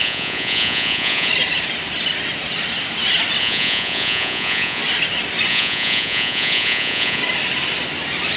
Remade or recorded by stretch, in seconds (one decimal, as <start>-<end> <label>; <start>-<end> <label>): 0.0-1.3 remade; 1.3-3.4 recorded; 3.4-4.8 remade; 4.8-5.5 recorded; 5.5-7.2 remade; 7.2-8.4 recorded